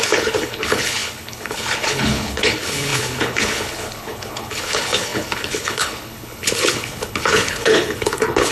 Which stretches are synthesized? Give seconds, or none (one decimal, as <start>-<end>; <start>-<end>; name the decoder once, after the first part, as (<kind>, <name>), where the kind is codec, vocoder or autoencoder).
0.0-8.5 (codec, HILCodec)